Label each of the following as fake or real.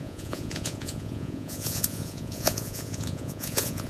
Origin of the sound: fake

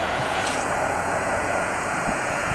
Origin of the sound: fake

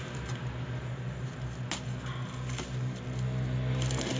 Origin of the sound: real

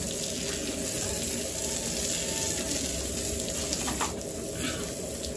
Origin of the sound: real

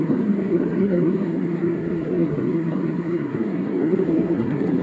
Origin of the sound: fake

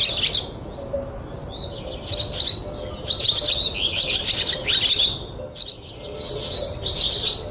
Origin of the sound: real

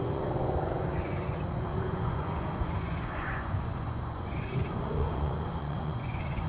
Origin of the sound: fake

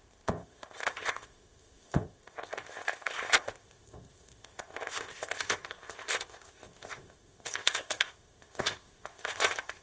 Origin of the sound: fake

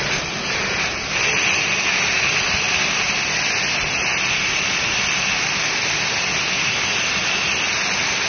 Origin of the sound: real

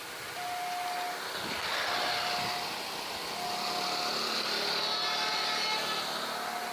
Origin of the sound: real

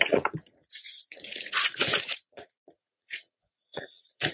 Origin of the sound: fake